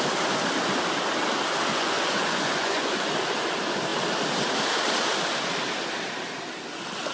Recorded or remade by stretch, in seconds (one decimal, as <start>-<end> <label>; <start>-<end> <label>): 0.0-1.7 recorded; 1.7-3.1 remade; 3.1-7.1 recorded